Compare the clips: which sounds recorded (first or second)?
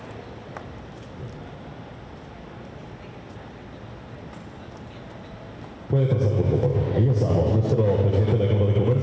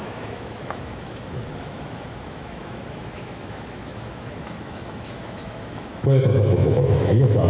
first